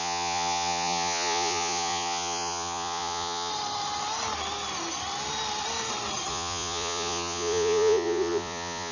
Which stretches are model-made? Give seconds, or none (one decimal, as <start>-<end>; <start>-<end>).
0.0-3.5; 6.3-8.9